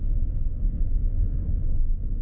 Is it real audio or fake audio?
real